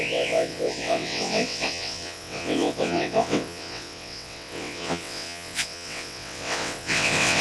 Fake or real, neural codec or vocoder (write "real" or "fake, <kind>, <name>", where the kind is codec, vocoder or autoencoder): fake, vocoder, WaveNeXt